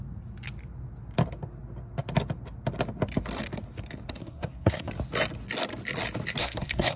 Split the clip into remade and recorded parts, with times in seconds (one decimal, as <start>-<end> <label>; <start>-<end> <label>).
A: 0.0-4.2 recorded; 4.2-4.9 remade; 4.9-6.4 recorded; 6.4-7.0 remade